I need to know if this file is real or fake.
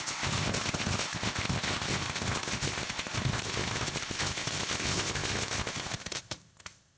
fake